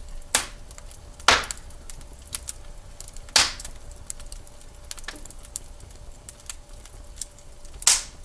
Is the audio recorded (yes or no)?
yes